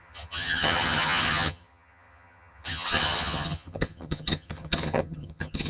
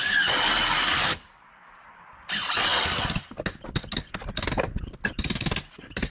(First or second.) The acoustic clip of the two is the second